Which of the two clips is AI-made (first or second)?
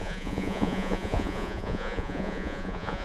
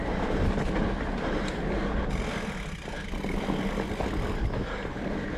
first